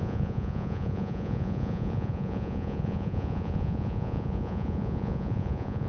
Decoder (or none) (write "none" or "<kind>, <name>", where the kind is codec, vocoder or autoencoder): vocoder, Vocos